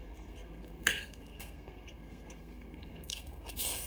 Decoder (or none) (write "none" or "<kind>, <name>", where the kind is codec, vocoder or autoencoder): codec, SNAC